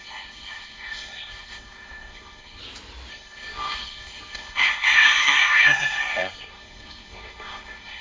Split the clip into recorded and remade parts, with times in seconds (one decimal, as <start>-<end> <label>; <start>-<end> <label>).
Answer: 0.0-2.6 remade; 2.6-3.1 recorded; 3.1-8.0 remade